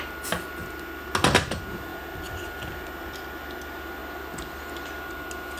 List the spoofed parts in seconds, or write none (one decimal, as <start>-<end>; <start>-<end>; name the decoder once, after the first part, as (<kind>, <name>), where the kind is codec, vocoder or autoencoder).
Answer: none